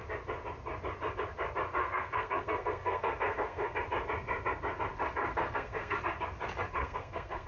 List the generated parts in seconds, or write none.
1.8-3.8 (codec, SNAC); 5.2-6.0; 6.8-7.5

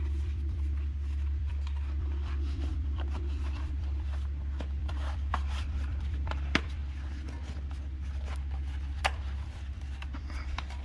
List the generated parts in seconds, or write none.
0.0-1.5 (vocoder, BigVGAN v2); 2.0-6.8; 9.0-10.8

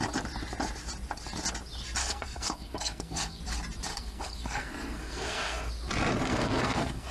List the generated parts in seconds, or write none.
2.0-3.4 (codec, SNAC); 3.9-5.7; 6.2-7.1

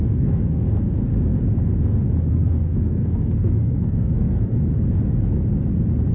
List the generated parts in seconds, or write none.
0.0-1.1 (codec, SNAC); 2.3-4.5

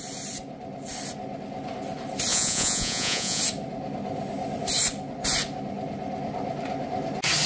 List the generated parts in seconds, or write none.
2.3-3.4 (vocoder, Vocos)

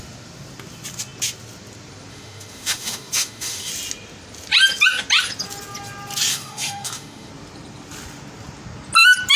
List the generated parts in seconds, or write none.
2.1-3.7 (autoencoder, DAC-VAE); 6.3-7.3

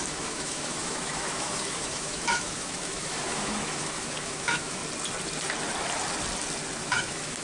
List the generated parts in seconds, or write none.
0.0-4.8 (autoencoder, DAC-VAE); 6.8-7.4

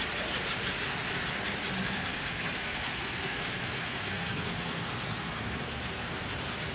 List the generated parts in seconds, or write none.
2.1-6.1 (codec, SNAC)